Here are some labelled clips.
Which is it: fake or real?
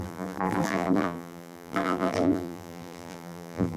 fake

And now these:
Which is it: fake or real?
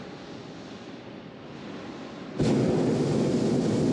real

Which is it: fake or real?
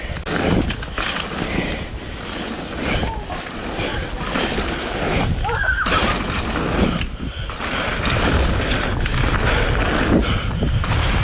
real